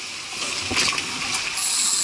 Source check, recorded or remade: recorded